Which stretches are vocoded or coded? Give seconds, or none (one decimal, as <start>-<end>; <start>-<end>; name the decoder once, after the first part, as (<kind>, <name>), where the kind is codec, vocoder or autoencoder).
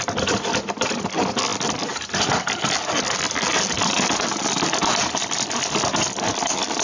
none